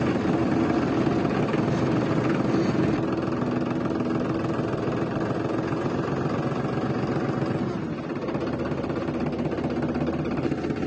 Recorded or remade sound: recorded